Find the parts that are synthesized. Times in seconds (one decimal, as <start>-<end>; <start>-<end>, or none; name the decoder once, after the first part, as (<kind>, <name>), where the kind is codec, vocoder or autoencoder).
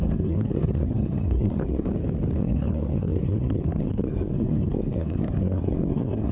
0.0-1.9 (codec, SNAC); 2.4-6.3